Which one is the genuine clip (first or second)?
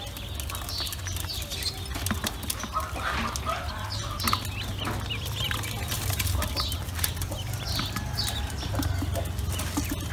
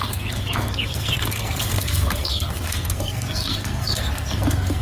first